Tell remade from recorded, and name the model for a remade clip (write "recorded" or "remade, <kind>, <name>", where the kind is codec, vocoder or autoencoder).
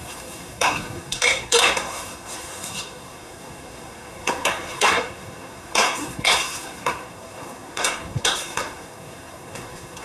remade, codec, SNAC